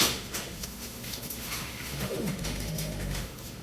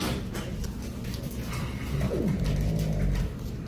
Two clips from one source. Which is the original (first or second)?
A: second